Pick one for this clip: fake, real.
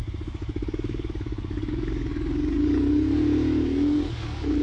fake